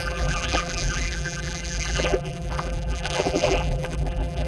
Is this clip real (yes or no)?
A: no